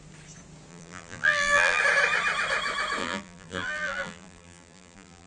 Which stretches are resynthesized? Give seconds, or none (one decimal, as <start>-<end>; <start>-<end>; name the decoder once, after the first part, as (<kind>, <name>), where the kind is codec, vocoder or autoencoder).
0.7-1.8 (vocoder, BigVGAN v2); 3.0-5.3